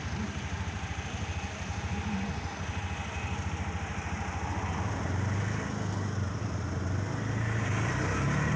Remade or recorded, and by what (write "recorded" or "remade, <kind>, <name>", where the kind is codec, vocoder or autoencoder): recorded